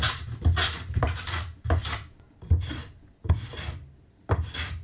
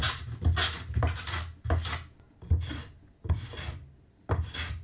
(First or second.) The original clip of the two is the second